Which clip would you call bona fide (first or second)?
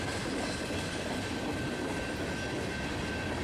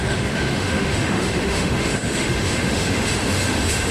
first